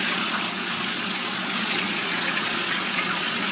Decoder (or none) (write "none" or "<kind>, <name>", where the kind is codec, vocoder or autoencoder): vocoder, Vocos